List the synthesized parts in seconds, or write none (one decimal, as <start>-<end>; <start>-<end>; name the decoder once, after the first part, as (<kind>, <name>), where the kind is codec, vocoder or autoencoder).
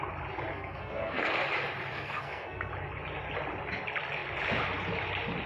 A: 0.5-1.3 (codec, SNAC); 1.9-2.7